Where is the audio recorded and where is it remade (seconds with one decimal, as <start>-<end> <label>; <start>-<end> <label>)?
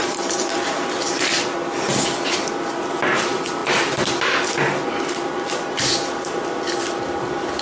0.0-7.6 recorded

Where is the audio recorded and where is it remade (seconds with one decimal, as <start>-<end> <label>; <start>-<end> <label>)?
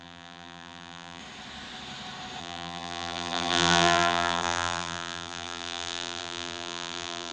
0.0-1.2 remade; 1.2-2.4 recorded; 2.4-7.3 remade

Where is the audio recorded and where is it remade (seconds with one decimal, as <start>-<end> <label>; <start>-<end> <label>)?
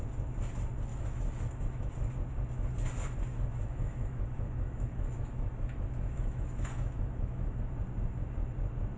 0.0-0.9 recorded; 0.9-1.9 remade; 1.9-3.3 recorded; 3.3-7.7 remade; 7.7-9.0 recorded